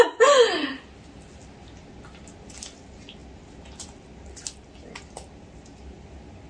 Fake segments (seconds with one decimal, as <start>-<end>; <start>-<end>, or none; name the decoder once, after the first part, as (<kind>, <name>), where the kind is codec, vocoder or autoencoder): none